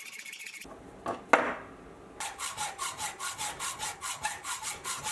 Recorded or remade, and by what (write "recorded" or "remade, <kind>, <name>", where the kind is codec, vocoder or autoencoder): recorded